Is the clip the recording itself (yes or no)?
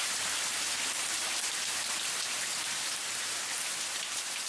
no